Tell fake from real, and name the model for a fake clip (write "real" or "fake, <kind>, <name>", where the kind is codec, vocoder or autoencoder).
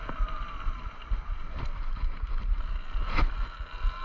real